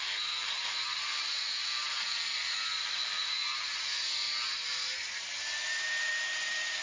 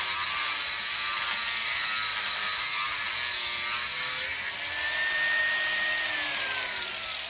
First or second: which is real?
second